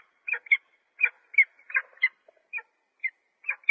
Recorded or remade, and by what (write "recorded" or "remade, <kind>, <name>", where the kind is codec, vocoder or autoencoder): recorded